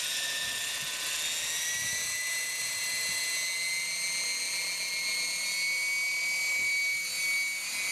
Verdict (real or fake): real